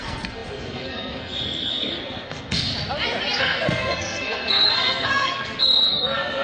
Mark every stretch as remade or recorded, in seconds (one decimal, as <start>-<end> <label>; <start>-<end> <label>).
0.0-2.7 remade; 2.7-3.4 recorded; 3.4-6.4 remade

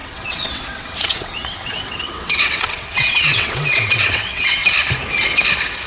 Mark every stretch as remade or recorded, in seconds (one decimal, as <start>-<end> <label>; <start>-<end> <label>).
0.0-4.6 remade; 4.6-5.9 recorded